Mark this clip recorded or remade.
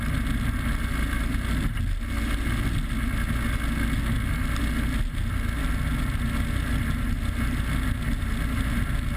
recorded